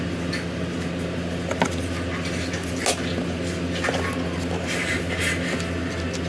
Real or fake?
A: real